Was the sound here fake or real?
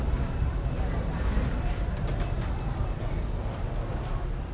real